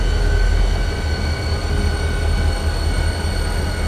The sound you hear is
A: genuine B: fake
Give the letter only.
A